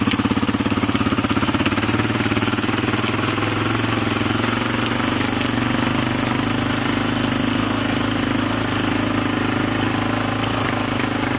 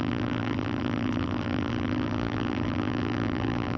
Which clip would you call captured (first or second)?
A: first